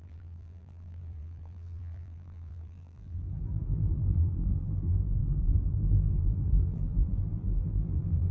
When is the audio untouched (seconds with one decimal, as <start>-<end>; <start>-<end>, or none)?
none